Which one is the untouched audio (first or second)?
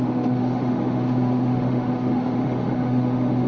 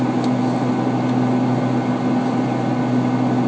second